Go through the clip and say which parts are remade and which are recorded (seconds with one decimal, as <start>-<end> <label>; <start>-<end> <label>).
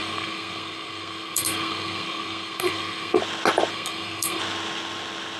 0.0-3.2 remade; 3.2-3.7 recorded; 3.7-4.4 remade; 4.4-5.4 recorded